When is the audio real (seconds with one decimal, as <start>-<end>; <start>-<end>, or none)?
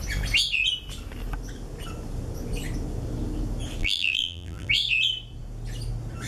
0.0-3.8; 4.7-6.3